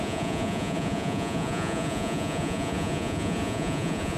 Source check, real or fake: fake